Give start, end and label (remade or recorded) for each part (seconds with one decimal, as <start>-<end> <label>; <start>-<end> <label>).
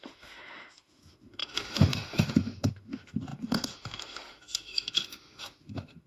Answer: 0.0-6.1 remade